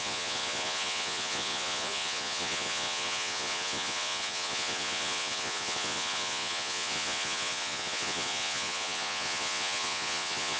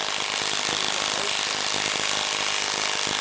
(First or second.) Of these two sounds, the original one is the second